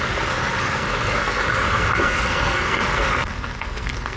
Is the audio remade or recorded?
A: remade